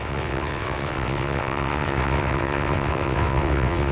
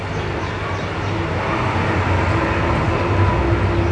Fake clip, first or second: first